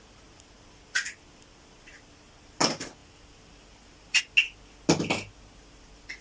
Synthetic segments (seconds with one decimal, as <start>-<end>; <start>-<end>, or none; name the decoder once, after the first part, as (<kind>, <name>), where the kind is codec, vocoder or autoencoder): 3.0-4.2 (vocoder, BigVGAN v2)